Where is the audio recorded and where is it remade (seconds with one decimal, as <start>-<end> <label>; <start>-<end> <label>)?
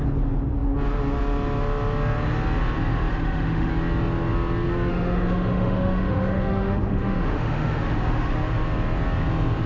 0.0-3.1 recorded; 3.1-3.7 remade; 3.7-4.9 recorded; 4.9-8.3 remade; 8.3-9.7 recorded